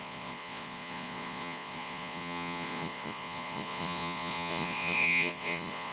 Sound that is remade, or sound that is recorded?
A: remade